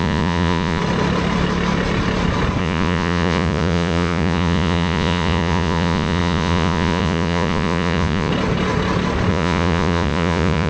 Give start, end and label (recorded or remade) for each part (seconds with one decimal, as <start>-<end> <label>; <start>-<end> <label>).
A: 0.0-0.8 remade; 0.8-2.6 recorded; 2.6-8.3 remade; 8.3-9.3 recorded; 9.3-10.7 remade